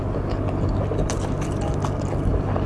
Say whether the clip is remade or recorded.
recorded